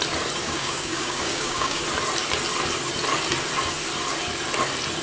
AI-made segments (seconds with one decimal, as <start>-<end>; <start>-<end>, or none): 0.4-1.8